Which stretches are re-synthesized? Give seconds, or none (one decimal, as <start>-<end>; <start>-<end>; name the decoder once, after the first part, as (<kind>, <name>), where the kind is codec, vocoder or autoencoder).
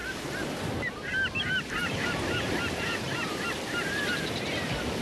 1.8-5.0 (vocoder, BigVGAN v2)